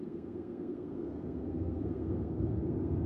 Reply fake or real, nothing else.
fake